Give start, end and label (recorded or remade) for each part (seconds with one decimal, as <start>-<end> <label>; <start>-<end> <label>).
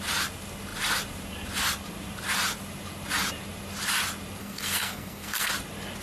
0.0-4.4 recorded; 4.4-5.5 remade; 5.5-6.0 recorded